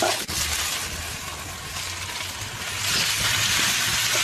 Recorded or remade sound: recorded